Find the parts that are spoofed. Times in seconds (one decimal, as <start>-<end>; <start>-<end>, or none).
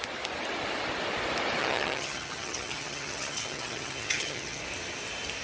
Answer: 1.6-4.6